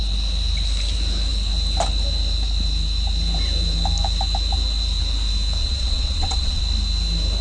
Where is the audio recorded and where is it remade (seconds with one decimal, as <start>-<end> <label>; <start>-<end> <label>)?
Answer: 0.0-5.6 recorded; 5.6-6.6 remade; 6.6-7.4 recorded

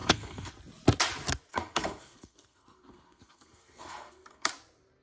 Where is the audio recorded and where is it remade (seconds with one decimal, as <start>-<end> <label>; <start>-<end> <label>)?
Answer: 0.0-0.5 remade; 0.5-1.5 recorded; 1.5-4.5 remade; 4.5-5.0 recorded

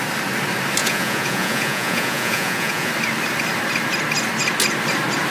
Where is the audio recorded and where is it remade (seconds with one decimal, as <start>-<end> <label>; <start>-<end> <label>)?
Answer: 0.0-0.8 recorded; 0.8-2.9 remade; 2.9-5.3 recorded

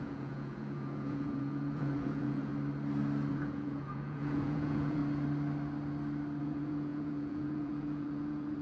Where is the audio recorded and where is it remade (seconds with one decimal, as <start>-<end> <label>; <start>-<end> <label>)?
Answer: 0.0-2.5 remade; 2.5-3.3 recorded; 3.3-5.0 remade; 5.0-6.4 recorded; 6.4-8.6 remade

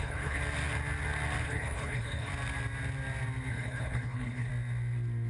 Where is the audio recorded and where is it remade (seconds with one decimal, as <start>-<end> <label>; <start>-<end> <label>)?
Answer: 0.0-0.4 remade; 0.4-1.4 recorded; 1.4-2.3 remade; 2.3-3.5 recorded; 3.5-4.5 remade; 4.5-5.3 recorded

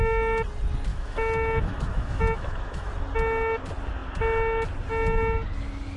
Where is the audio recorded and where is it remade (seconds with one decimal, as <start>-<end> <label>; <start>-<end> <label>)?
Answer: 0.0-0.9 recorded; 0.9-2.9 remade; 2.9-6.0 recorded

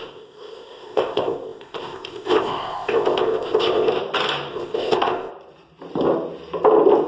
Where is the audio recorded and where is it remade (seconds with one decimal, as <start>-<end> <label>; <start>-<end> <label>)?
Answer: 0.0-4.0 remade; 4.0-4.5 recorded; 4.5-5.3 remade; 5.3-7.1 recorded

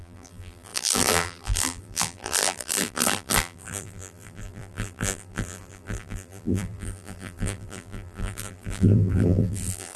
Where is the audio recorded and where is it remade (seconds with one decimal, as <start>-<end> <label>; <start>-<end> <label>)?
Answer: 0.0-10.0 remade